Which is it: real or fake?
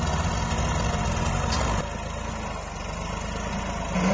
real